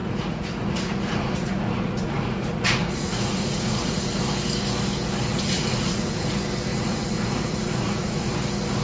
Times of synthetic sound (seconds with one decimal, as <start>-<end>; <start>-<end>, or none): 0.0-4.2; 5.3-6.3; 6.7-8.3